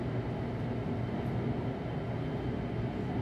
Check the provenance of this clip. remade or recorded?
recorded